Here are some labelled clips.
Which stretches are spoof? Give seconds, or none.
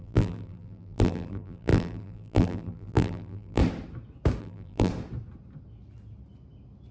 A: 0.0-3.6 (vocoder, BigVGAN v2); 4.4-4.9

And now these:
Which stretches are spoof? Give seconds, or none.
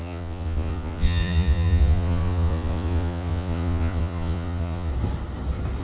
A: 0.0-4.9 (vocoder, Vocos)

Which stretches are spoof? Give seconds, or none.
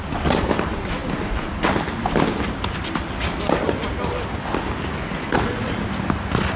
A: none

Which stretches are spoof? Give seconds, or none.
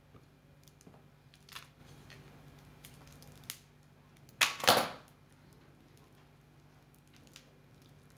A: none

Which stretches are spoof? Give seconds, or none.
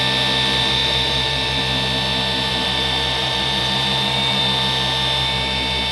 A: 0.8-1.6 (vocoder, BigVGAN v2); 2.5-4.4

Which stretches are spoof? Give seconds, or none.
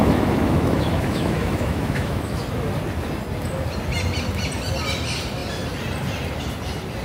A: 0.0-2.4 (autoencoder, DAC-VAE)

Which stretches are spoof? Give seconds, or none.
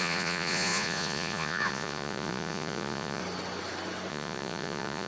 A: 0.0-3.2 (vocoder, Vocos); 4.1-5.1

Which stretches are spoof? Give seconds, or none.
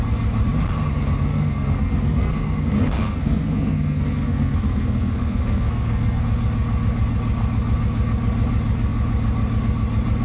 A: 1.3-6.2 (codec, SNAC)